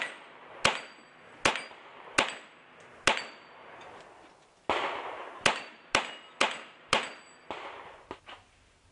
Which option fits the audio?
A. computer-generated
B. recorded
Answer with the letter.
B